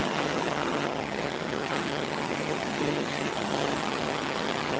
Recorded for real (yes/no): no